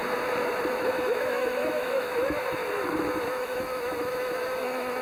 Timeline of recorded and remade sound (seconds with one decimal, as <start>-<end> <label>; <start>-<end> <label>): 0.0-0.7 recorded; 0.7-2.6 remade; 2.6-3.1 recorded; 3.1-5.0 remade